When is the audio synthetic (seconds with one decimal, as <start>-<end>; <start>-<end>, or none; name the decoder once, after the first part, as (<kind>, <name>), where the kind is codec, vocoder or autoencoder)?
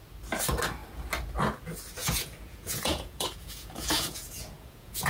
2.0-5.1 (vocoder, Vocos)